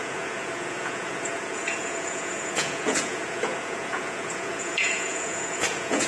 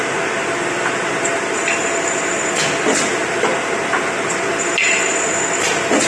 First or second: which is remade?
first